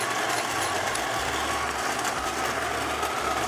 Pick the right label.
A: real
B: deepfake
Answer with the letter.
A